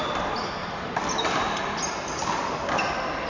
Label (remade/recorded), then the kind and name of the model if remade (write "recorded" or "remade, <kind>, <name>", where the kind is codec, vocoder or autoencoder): recorded